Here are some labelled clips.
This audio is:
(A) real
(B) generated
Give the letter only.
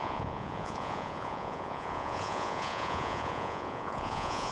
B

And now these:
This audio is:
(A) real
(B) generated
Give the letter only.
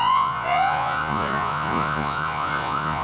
B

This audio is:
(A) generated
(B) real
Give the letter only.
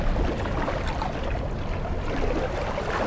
B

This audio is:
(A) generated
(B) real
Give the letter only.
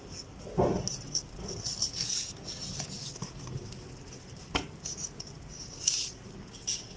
B